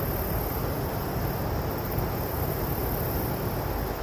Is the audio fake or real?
real